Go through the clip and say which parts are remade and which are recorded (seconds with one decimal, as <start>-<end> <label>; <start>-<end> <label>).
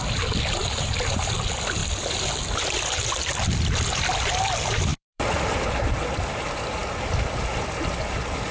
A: 0.0-0.6 recorded; 0.6-1.3 remade; 1.3-1.8 recorded; 1.8-3.6 remade; 3.6-4.9 recorded; 4.9-5.6 remade; 5.6-8.5 recorded